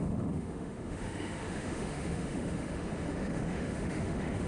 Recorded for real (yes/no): no